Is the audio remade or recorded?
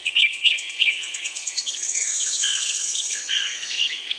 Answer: remade